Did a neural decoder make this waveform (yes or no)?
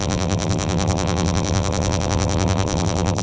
yes